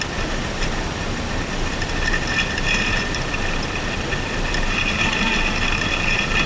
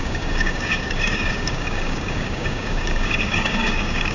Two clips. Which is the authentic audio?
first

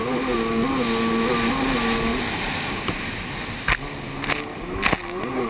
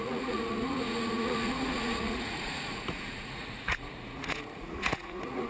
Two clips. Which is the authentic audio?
first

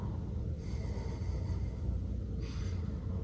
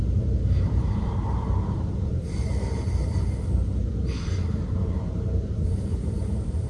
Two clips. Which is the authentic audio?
first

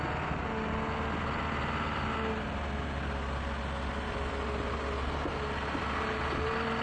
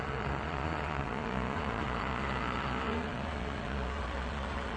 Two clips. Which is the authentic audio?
first